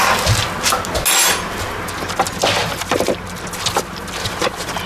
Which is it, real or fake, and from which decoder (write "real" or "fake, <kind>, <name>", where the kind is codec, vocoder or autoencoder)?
real